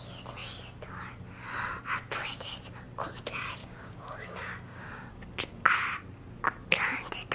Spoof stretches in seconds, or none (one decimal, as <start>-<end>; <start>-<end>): 3.6-5.1